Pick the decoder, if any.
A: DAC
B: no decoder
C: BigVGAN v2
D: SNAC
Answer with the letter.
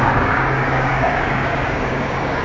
A